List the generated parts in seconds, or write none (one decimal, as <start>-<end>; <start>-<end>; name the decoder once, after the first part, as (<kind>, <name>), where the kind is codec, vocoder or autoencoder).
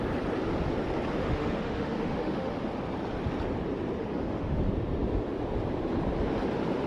1.2-2.6 (autoencoder, DAC-VAE); 4.0-4.6